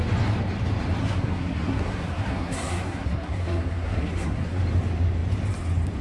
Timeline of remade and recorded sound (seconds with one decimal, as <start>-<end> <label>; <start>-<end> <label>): 0.0-1.0 recorded; 1.0-4.6 remade; 4.6-6.0 recorded